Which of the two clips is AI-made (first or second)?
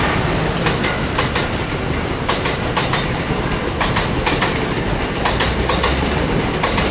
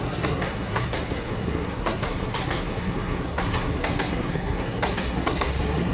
second